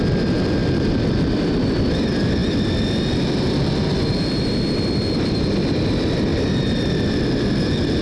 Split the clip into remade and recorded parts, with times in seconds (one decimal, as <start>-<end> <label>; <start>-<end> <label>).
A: 0.0-8.0 recorded